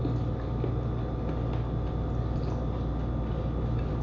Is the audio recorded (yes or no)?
yes